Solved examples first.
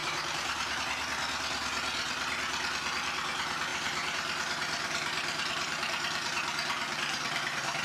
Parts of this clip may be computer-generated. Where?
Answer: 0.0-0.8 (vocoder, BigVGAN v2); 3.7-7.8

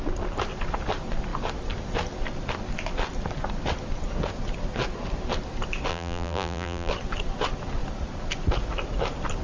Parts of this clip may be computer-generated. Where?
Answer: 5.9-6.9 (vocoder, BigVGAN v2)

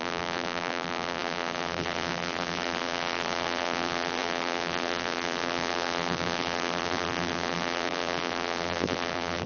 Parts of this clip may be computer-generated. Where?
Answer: 0.0-9.5 (vocoder, BigVGAN v2)

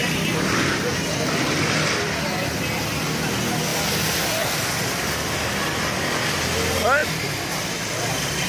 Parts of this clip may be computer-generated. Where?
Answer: 0.0-2.4 (vocoder, BigVGAN v2); 3.7-6.0; 7.0-8.5